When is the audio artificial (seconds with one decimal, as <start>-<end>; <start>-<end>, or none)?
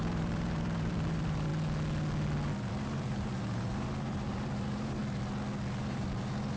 0.0-1.5; 2.7-5.0; 5.8-6.6